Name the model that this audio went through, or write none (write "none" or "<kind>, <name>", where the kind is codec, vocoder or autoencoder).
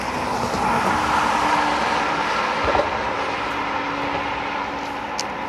none